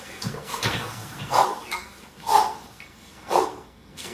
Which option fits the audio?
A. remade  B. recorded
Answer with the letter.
A